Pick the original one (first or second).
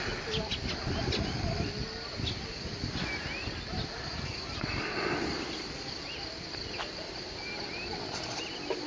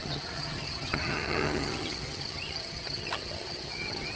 first